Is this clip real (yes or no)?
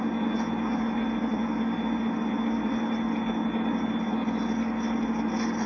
yes